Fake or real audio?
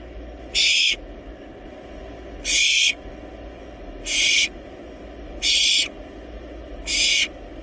real